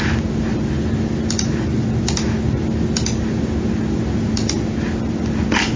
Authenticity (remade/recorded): recorded